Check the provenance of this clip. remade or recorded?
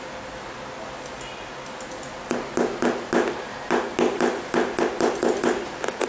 recorded